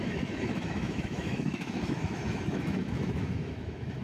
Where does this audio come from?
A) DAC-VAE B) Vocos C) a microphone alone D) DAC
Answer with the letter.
A